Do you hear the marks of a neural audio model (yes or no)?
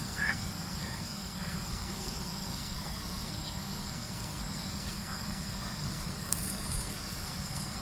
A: yes